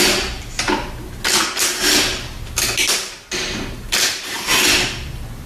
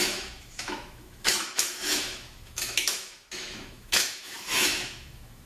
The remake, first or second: second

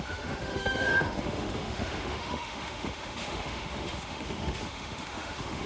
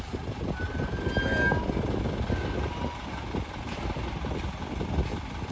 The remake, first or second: first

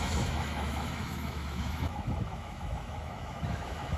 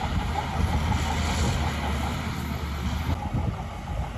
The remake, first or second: first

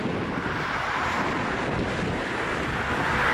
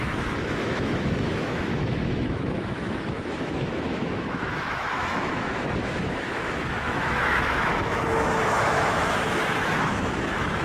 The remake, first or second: second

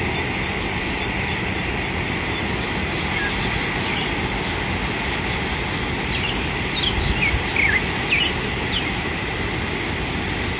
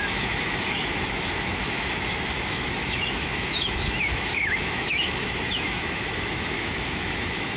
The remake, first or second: second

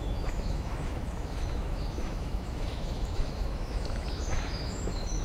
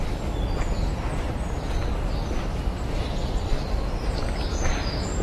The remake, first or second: first